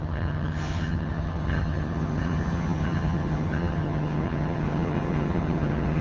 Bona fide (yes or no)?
no